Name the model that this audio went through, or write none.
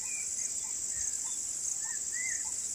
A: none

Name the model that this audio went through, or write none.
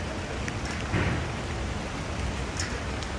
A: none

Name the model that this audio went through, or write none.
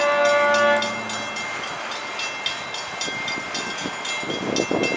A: none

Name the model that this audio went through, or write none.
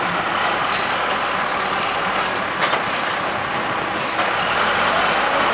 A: vocoder, BigVGAN v2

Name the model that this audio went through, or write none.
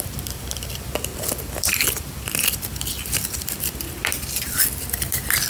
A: vocoder, BigVGAN v2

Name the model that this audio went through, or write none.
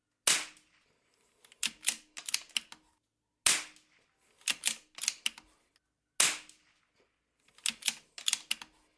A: none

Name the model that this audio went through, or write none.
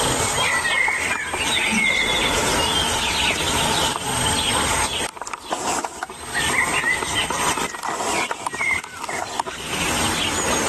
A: none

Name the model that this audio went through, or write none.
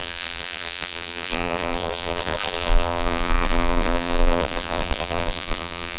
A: vocoder, BigVGAN v2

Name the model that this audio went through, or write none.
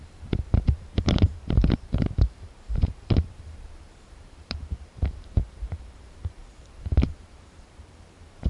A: vocoder, BigVGAN v2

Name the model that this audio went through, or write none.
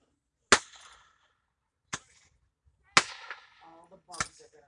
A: none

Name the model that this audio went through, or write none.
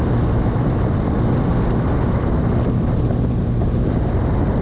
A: none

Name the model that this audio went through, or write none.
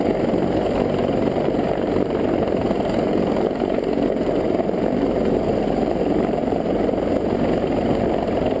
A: vocoder, BigVGAN v2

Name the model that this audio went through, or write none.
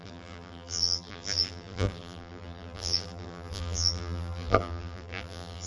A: vocoder, BigVGAN v2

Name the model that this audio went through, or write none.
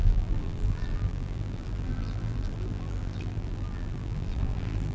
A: vocoder, BigVGAN v2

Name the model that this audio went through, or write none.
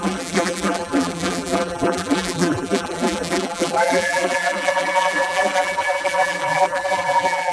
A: vocoder, BigVGAN v2